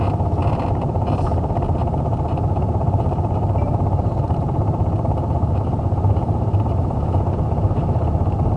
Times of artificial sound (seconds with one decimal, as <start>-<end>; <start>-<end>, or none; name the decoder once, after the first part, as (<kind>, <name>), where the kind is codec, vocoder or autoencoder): 2.1-7.0 (vocoder, BigVGAN v2)